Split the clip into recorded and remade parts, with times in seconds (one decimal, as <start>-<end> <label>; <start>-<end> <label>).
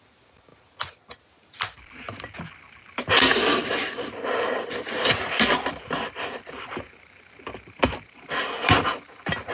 0.0-9.5 recorded